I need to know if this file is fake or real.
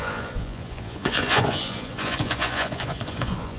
fake